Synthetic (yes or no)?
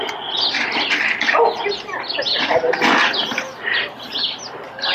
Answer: no